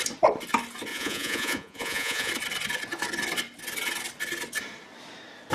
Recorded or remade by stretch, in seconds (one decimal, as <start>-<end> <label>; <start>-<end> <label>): 0.0-0.9 recorded; 0.9-2.3 remade; 2.3-5.5 recorded